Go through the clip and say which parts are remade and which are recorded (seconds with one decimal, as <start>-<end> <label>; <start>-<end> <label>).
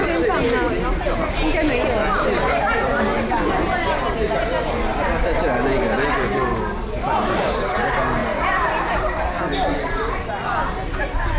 0.0-11.4 recorded